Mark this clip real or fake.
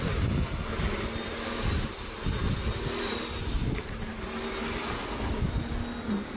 real